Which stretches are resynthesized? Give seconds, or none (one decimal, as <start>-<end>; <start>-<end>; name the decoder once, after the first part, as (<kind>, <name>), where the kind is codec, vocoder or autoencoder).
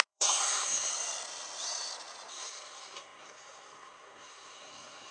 0.0-0.9 (codec, SNAC); 2.3-5.1